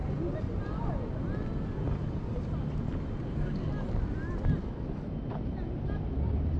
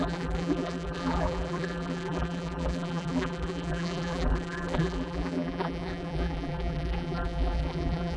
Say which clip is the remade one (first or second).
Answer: second